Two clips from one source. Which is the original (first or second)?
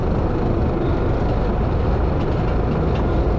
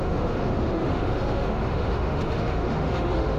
first